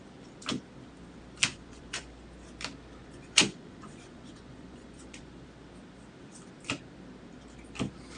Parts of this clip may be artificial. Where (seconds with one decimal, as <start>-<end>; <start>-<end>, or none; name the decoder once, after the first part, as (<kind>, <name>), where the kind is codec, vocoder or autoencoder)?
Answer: 1.5-2.0 (vocoder, Vocos); 3.0-5.3

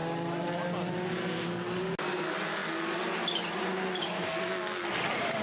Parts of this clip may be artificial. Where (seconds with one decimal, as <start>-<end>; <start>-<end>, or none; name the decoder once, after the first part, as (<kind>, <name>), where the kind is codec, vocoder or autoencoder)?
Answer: none

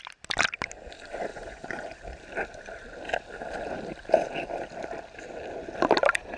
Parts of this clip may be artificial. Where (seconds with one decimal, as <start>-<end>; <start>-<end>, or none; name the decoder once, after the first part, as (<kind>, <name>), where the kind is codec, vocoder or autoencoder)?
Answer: 1.3-2.0 (vocoder, Vocos)

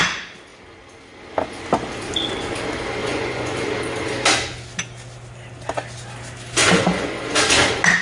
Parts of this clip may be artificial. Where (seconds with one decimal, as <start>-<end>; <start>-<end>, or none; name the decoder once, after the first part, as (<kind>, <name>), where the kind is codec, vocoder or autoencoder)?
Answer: 3.0-3.7 (vocoder, Vocos); 6.6-7.2

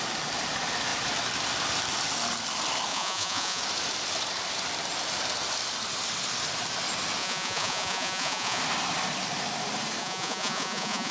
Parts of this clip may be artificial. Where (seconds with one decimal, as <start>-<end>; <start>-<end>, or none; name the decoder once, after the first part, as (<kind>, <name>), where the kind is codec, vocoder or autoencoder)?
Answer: 2.9-3.6 (vocoder, Vocos); 7.2-8.6; 10.0-11.1

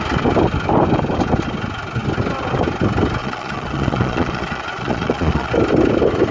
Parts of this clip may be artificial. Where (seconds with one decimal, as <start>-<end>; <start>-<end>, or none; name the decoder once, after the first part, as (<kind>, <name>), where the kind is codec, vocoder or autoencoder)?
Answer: 3.2-5.5 (vocoder, Vocos)

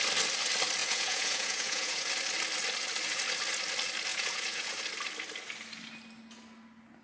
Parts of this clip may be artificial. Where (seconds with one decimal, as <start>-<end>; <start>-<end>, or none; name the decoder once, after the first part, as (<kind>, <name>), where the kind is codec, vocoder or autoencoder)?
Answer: 0.8-2.1 (vocoder, Vocos); 4.1-4.8

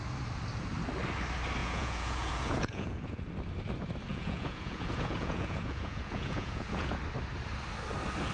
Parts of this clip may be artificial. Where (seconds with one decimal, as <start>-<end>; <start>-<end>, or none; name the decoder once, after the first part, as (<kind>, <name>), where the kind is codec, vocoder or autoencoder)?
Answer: 1.6-3.3 (vocoder, Vocos); 4.1-7.0